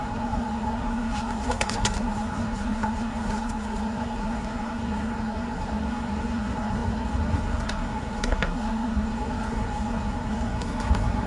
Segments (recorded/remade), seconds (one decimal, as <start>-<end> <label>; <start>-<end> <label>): 0.0-11.3 remade